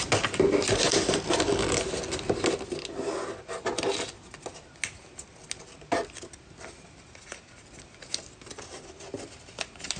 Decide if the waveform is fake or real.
real